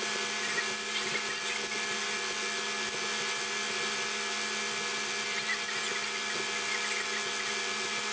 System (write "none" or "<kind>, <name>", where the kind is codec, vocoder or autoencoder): none